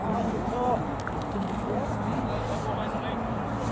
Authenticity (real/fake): real